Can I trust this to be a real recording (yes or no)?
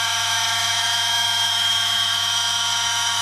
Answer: no